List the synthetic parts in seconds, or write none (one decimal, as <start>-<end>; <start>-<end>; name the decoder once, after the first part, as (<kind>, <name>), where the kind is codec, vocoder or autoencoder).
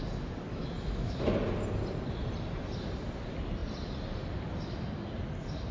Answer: 0.5-1.3 (autoencoder, DAC-VAE)